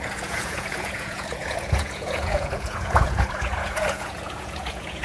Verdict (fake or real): fake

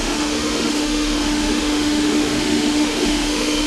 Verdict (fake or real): fake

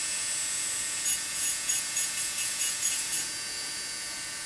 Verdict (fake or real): fake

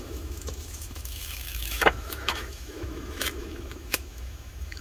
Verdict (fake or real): fake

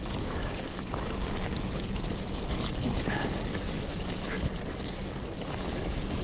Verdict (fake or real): fake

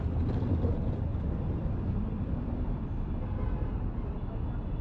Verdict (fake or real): real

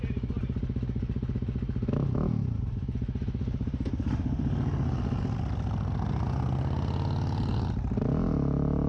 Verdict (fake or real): real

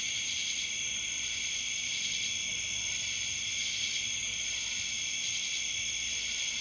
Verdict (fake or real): fake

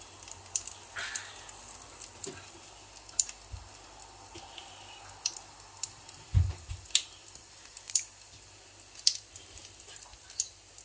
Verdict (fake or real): real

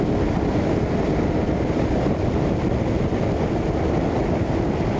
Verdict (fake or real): real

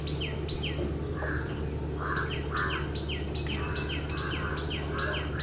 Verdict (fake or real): real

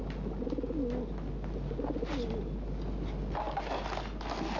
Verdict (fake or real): real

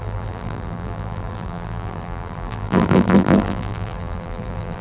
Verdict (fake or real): fake